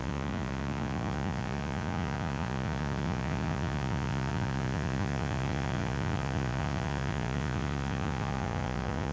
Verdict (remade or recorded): remade